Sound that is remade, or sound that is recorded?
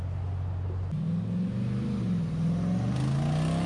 recorded